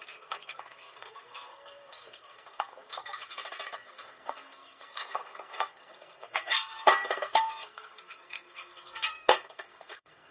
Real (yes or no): no